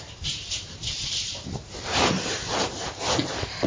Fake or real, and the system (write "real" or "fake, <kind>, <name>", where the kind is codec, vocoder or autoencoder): fake, vocoder, BigVGAN v2